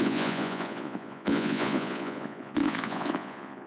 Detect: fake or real fake